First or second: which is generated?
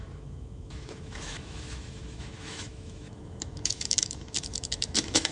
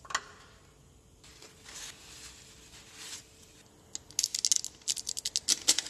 first